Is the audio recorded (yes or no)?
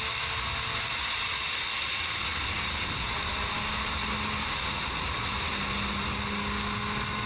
yes